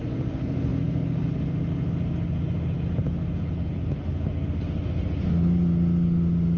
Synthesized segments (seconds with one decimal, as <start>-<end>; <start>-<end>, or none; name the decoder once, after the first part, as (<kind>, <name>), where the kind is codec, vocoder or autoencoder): none